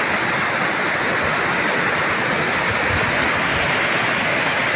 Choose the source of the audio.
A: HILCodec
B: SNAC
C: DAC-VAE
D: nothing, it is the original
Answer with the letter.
D